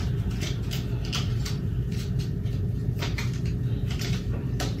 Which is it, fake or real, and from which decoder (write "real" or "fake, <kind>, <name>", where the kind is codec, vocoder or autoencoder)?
fake, vocoder, BigVGAN v2